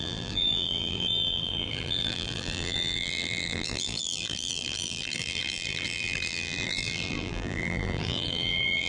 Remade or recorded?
remade